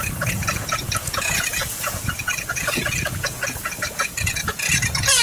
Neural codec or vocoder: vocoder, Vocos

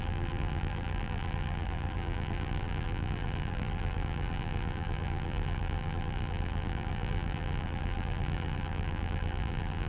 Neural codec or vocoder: vocoder, BigVGAN v2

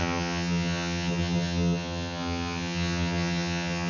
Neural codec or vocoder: vocoder, HiFi-GAN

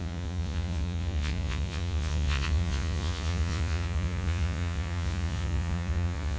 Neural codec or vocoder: vocoder, Vocos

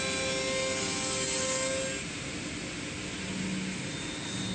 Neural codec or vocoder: none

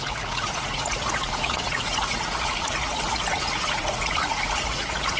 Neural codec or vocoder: vocoder, Vocos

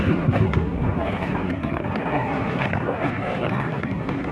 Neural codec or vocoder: codec, SNAC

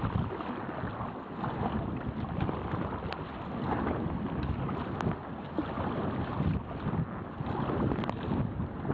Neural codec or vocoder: none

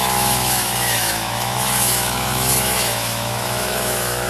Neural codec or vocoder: autoencoder, DAC-VAE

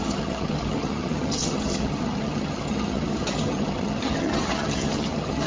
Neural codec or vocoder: vocoder, HiFi-GAN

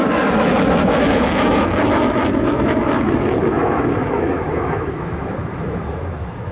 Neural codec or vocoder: autoencoder, DAC-VAE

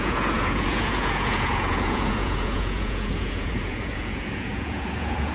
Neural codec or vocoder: vocoder, Vocos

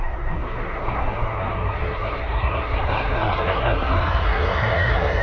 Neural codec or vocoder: codec, SNAC